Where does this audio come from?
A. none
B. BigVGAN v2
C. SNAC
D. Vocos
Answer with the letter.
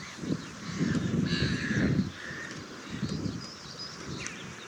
B